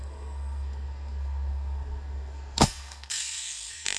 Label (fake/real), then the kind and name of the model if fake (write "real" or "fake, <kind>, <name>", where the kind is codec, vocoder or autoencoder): fake, codec, SNAC